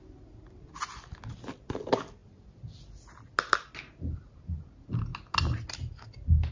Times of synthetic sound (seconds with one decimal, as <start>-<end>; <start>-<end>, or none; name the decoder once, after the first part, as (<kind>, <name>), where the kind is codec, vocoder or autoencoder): none

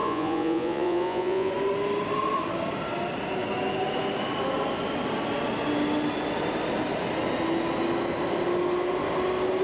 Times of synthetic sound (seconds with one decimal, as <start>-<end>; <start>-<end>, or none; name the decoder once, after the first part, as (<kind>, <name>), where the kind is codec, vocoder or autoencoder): 0.0-1.5 (vocoder, Vocos)